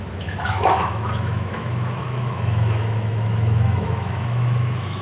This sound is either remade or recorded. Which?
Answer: remade